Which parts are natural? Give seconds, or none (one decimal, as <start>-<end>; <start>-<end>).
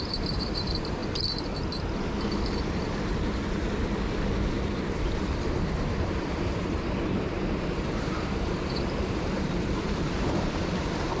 1.0-4.5